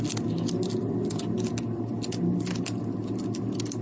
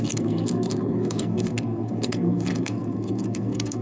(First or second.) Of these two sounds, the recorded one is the first